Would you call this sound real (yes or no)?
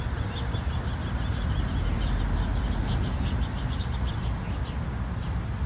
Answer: yes